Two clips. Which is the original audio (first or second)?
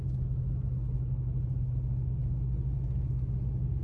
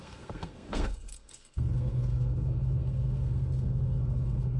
first